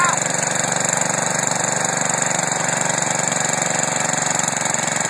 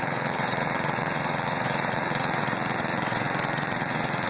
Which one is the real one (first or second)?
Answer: first